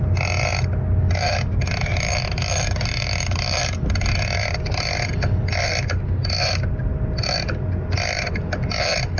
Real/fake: real